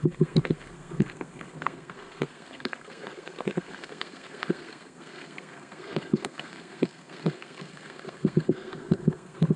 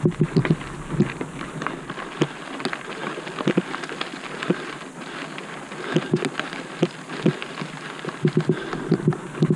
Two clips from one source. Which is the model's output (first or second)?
first